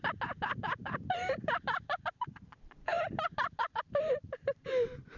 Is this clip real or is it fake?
fake